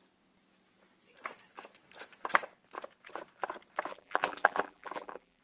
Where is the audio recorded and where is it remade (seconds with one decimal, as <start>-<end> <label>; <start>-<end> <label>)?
0.0-3.9 recorded; 3.9-5.4 remade